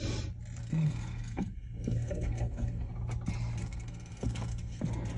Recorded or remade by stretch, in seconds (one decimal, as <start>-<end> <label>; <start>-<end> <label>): 0.0-0.6 recorded; 0.6-2.9 remade; 2.9-3.6 recorded; 3.6-4.8 remade; 4.8-5.2 recorded